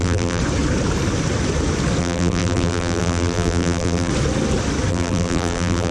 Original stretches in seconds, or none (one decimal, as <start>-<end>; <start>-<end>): 0.4-2.0; 4.1-4.9

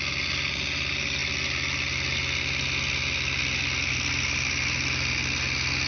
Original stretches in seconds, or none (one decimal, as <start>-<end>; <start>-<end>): 0.0-5.9

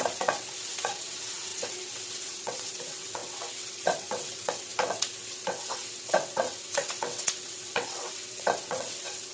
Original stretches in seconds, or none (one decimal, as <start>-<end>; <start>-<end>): none

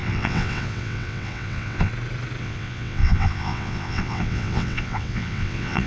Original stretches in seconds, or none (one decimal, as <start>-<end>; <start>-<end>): 1.9-2.4

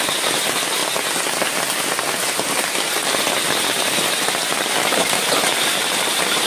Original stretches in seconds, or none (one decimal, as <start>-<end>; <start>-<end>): 0.0-5.8

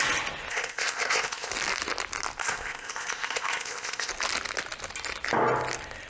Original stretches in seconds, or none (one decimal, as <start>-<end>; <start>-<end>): 0.0-0.5; 1.5-2.4; 4.1-6.1

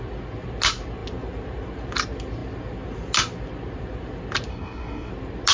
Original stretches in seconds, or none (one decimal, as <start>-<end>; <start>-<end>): 0.0-4.5; 5.1-5.5